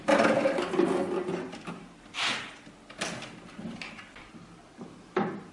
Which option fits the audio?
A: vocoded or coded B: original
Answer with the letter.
B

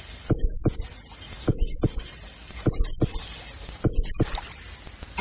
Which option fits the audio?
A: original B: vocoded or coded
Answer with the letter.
A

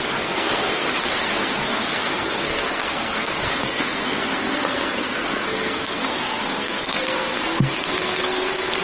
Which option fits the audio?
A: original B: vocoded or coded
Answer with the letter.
B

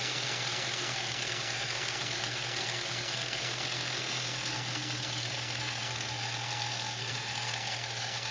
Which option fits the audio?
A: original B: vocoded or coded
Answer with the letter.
B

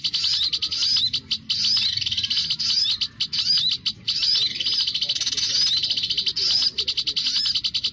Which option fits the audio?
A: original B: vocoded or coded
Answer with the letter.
A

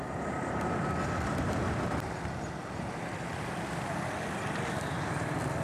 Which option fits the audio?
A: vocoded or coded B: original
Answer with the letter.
B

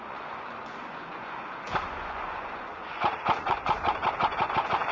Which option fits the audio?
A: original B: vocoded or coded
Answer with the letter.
B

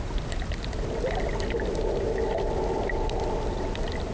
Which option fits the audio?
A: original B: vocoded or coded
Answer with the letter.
A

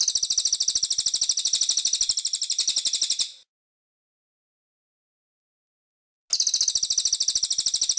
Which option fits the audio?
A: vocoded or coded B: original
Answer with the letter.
B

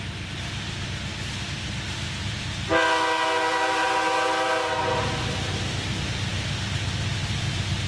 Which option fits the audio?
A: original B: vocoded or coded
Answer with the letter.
A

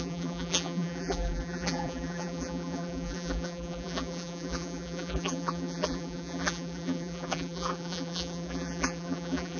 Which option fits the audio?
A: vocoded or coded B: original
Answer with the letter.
A